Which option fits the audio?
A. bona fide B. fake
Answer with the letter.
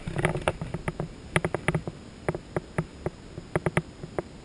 A